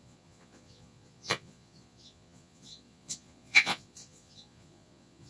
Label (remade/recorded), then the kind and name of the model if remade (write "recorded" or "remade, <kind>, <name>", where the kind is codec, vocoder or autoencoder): remade, vocoder, Vocos